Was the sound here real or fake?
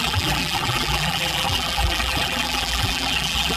fake